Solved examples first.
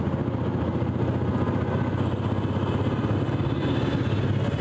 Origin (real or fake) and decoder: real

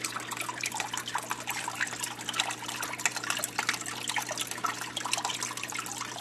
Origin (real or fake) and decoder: real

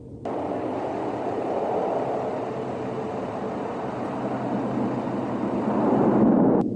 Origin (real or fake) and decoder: real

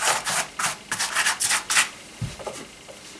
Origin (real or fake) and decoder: real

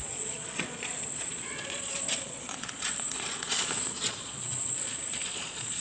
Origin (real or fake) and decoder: fake, vocoder, Vocos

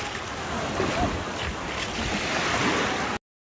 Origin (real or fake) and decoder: real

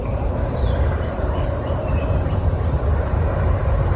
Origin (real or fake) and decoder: real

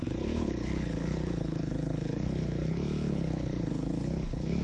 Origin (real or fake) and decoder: fake, codec, HILCodec